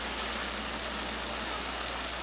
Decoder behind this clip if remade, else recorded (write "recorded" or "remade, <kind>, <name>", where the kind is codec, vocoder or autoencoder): recorded